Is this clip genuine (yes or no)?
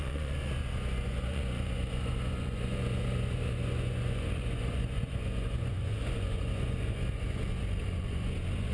no